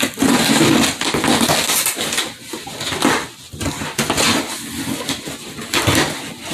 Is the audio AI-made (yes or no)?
no